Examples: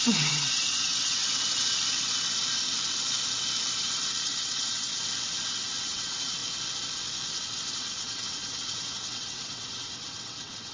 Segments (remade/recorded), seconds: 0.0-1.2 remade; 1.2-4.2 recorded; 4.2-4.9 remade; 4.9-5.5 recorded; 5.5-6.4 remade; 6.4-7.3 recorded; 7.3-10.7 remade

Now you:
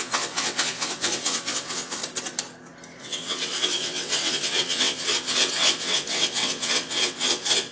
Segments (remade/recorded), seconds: 0.0-2.0 remade; 2.0-3.0 recorded; 3.0-7.7 remade

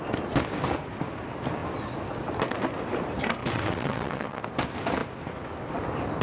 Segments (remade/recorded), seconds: 0.0-3.4 recorded; 3.4-4.4 remade; 4.4-6.2 recorded

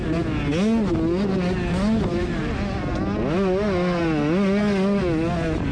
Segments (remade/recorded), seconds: 0.0-5.7 recorded

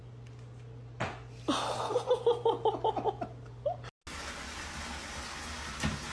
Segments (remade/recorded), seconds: 0.0-6.1 recorded

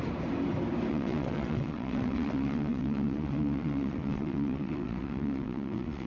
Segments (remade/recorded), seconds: 0.0-0.9 recorded; 0.9-6.1 remade

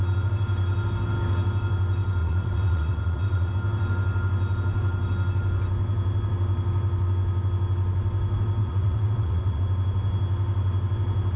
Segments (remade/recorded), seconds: 0.0-2.2 recorded; 2.2-3.5 remade; 3.5-8.6 recorded; 8.6-9.6 remade; 9.6-11.4 recorded

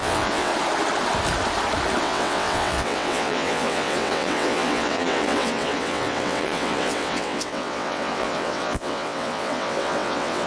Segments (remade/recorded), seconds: 0.0-0.5 remade; 0.5-2.0 recorded; 2.0-10.5 remade